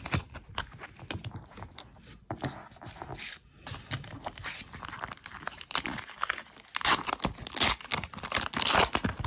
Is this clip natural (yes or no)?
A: yes